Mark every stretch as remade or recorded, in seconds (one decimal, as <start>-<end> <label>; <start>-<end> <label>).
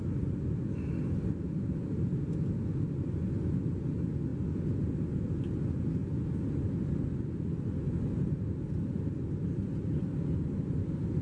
0.0-11.2 recorded